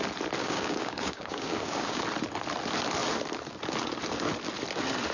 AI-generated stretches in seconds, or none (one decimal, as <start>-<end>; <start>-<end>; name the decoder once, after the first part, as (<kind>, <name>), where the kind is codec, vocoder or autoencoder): 0.4-2.0 (codec, DAC)